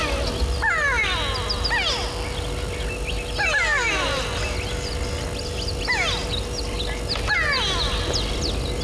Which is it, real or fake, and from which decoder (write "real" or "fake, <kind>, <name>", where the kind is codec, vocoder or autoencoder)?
real